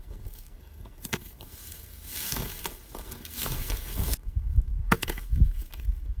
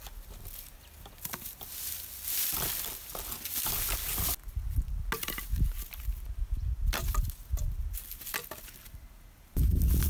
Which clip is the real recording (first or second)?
second